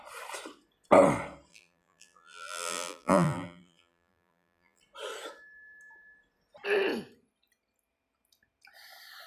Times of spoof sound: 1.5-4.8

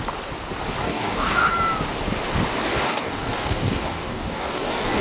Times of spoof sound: 0.8-1.5; 2.7-5.0

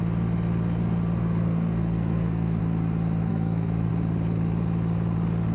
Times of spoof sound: 1.2-2.6; 3.3-3.9